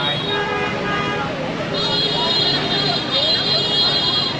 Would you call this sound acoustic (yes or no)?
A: yes